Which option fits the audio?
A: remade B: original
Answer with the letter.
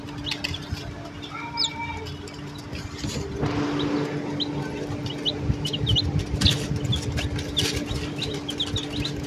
B